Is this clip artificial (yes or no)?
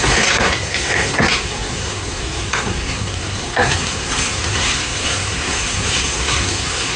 yes